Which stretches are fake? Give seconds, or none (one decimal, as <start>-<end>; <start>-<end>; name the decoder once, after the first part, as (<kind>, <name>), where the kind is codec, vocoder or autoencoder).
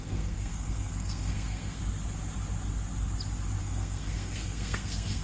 0.0-1.8 (codec, SNAC); 3.6-5.2